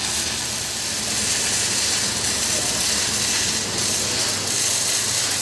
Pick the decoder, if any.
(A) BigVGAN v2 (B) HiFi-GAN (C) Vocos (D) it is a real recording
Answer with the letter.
D